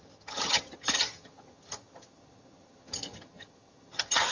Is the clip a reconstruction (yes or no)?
yes